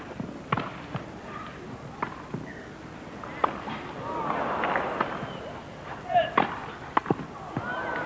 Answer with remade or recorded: recorded